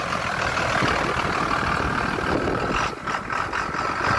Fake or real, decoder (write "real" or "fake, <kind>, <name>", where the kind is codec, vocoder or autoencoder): real